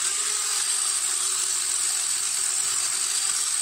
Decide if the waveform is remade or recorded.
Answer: recorded